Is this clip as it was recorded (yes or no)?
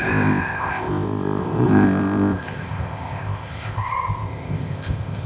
no